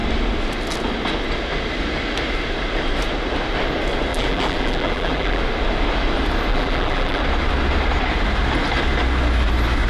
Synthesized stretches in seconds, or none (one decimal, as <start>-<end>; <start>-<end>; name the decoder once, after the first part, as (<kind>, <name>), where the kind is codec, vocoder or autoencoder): 4.1-5.4 (vocoder, BigVGAN v2); 6.5-7.2